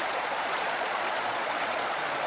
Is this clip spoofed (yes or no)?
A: yes